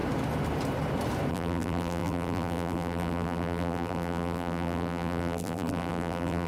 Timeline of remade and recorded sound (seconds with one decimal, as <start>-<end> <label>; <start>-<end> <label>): 0.0-1.3 recorded; 1.3-6.5 remade